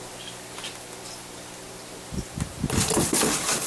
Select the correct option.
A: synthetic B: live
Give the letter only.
B